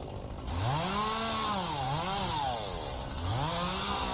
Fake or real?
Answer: real